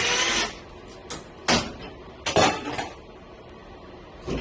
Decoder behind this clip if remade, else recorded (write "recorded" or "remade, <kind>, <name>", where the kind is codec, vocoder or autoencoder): recorded